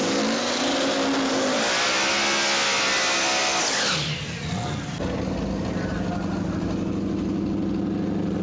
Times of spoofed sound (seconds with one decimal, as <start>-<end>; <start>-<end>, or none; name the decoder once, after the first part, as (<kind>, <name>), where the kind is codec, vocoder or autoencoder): none